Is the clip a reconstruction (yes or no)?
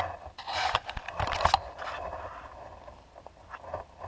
no